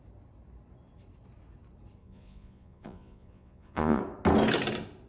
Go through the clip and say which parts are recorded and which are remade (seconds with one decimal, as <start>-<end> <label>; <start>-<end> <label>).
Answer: 0.0-2.0 recorded; 2.0-4.0 remade; 4.0-5.1 recorded